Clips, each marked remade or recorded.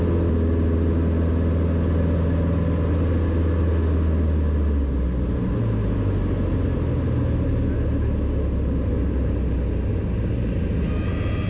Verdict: recorded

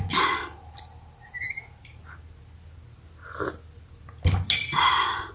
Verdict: recorded